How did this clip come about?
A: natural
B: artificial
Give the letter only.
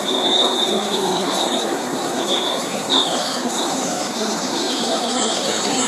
B